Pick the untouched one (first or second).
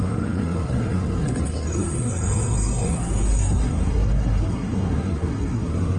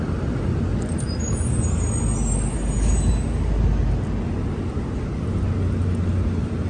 second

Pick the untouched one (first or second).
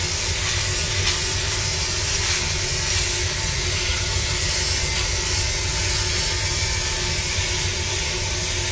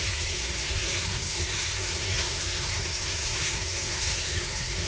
first